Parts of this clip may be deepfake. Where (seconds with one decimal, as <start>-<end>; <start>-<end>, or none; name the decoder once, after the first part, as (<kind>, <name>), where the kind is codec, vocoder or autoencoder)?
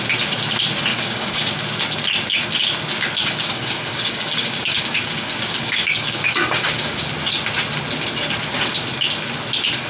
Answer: 0.9-1.5 (codec, DAC); 3.2-7.0